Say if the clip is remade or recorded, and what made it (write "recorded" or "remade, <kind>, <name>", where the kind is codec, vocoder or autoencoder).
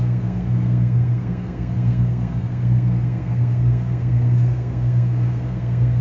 remade, codec, SNAC